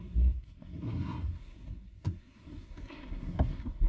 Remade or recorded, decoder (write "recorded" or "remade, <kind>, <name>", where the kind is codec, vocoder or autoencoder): remade, codec, SNAC